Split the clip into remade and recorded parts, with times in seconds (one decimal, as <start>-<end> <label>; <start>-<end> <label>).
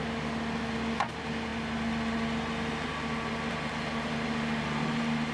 0.0-5.3 recorded